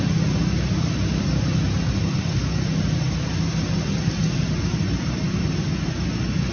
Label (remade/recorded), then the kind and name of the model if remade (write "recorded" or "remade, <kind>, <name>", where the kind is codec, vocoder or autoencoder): recorded